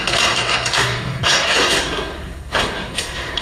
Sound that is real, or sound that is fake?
fake